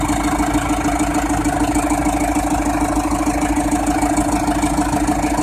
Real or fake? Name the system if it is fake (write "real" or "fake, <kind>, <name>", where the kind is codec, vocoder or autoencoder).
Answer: real